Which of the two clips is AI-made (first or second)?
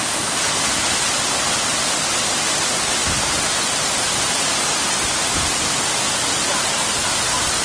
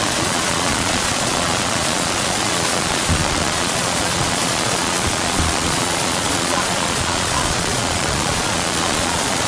second